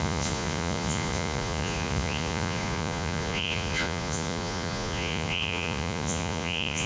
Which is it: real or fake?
fake